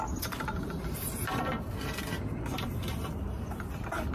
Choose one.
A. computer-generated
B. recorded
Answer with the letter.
B